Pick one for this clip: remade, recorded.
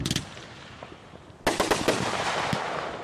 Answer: recorded